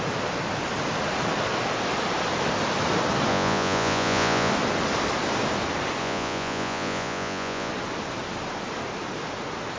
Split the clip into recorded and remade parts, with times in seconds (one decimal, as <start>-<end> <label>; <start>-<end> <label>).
0.0-3.3 recorded; 3.3-4.5 remade; 4.5-6.0 recorded; 6.0-7.7 remade; 7.7-9.8 recorded